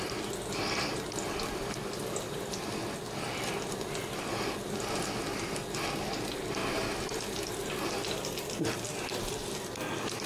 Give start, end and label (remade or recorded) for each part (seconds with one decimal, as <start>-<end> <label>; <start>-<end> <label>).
0.0-10.3 recorded